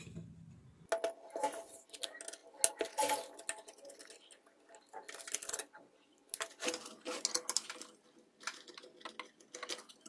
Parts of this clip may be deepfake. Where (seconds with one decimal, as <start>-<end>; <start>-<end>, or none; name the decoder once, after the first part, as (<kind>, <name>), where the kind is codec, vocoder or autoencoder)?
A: none